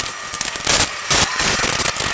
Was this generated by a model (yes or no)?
no